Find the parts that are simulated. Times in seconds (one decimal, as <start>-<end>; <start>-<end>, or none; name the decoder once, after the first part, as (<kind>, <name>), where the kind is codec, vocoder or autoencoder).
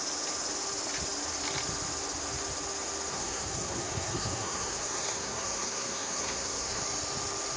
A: 3.1-6.8 (codec, SNAC)